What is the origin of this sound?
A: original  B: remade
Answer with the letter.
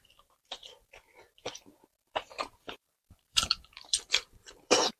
B